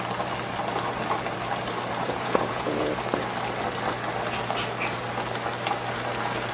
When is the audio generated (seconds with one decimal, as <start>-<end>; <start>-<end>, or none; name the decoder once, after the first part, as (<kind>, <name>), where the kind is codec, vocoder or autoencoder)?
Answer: 2.0-2.9 (vocoder, Vocos)